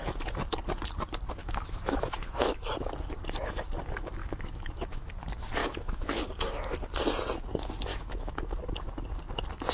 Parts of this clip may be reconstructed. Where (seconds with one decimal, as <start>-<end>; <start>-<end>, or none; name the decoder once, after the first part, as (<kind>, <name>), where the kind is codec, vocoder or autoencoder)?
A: 1.4-2.6 (autoencoder, DAC-VAE); 4.2-5.1; 5.6-6.2; 7.9-8.6